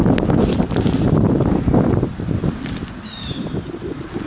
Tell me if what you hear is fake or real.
real